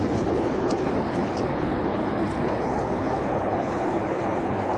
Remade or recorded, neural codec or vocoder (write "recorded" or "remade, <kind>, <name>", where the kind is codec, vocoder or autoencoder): remade, codec, HILCodec